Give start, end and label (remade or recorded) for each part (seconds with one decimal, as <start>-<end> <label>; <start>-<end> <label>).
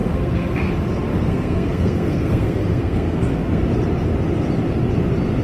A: 0.0-0.7 remade; 0.7-1.1 recorded; 1.1-3.6 remade; 3.6-5.4 recorded